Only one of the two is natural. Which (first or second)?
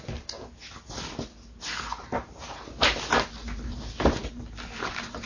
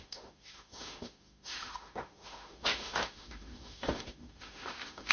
first